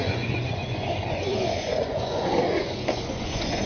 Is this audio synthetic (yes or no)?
yes